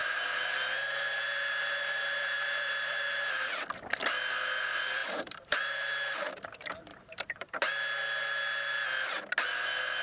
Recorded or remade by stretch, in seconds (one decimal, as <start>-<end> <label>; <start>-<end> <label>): 0.0-3.5 remade; 3.5-5.0 recorded; 5.0-6.1 remade; 6.1-6.9 recorded; 6.9-7.6 remade; 7.6-10.0 recorded